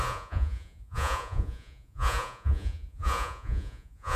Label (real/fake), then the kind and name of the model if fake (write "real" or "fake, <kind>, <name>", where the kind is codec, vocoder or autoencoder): fake, vocoder, Vocos